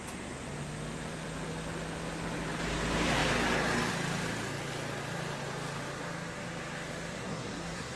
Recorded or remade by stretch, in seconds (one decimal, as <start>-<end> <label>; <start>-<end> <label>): 0.0-7.2 recorded; 7.2-8.0 remade